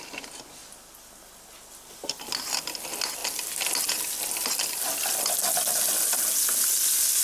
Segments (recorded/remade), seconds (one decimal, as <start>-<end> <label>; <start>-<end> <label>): 0.0-7.2 recorded